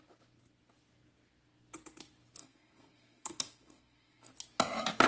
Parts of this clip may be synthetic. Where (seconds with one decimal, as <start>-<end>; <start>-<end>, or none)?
2.4-4.3